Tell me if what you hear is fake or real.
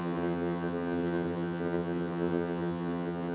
fake